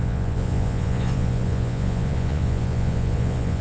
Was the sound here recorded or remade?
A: remade